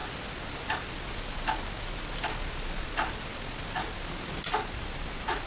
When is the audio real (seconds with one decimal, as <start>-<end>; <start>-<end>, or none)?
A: 0.0-2.5; 3.3-4.9